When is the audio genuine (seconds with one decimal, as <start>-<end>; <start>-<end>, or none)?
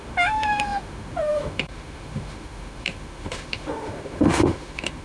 none